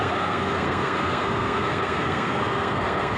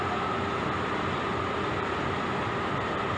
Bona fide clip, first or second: second